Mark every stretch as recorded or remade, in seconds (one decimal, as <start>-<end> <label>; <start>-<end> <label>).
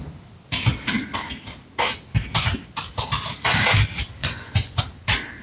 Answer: 0.0-4.2 recorded; 4.2-4.8 remade; 4.8-5.4 recorded